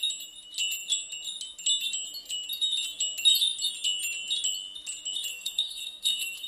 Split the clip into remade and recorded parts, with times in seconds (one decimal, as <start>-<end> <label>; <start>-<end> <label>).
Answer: 0.0-5.3 recorded; 5.3-6.5 remade